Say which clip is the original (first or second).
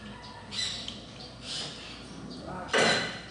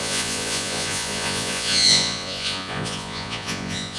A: first